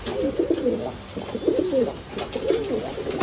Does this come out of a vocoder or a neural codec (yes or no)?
no